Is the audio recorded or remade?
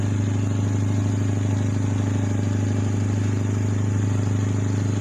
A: recorded